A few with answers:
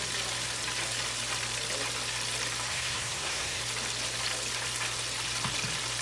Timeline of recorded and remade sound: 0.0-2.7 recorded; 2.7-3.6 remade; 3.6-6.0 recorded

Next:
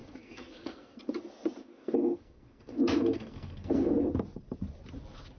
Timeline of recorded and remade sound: 0.0-1.0 remade; 1.0-1.7 recorded; 1.7-3.9 remade; 3.9-5.4 recorded

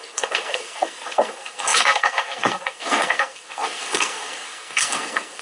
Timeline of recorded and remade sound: 0.0-5.4 remade

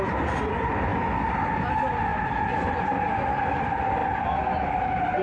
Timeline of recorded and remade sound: 0.0-5.2 recorded